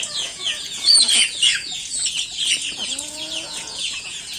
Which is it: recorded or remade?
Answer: remade